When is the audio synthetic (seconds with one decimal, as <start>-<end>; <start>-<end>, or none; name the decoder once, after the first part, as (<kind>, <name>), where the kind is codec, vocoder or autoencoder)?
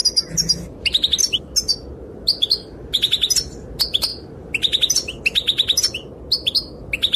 none